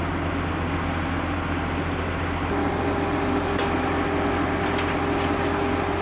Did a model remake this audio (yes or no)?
no